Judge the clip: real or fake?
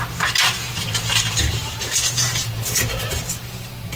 real